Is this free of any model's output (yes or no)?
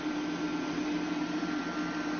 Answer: yes